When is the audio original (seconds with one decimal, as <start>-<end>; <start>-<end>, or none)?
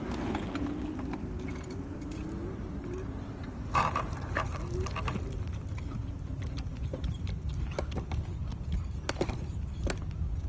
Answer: 0.0-1.5; 4.9-6.7; 7.5-8.5; 9.7-10.5